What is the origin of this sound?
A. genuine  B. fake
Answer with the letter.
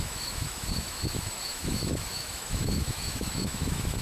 B